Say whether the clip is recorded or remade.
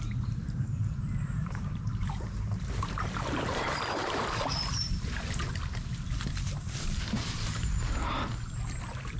remade